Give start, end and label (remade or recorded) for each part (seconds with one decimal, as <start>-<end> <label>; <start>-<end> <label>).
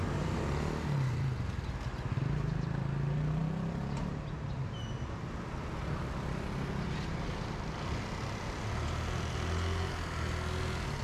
0.0-11.0 recorded